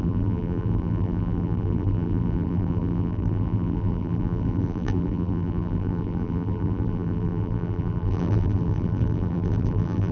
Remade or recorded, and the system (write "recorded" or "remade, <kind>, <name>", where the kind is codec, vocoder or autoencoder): remade, vocoder, BigVGAN v2